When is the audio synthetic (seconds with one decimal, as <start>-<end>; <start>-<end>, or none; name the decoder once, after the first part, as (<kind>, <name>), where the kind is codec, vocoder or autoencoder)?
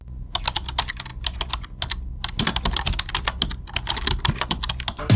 none